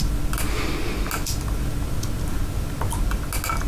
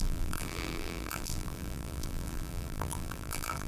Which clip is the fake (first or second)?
second